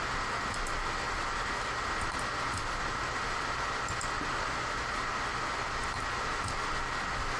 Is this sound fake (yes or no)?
no